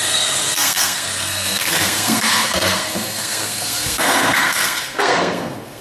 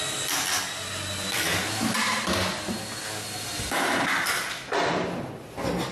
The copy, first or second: first